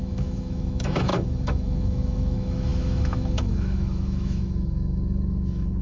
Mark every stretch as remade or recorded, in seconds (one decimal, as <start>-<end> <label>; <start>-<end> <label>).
0.0-5.8 remade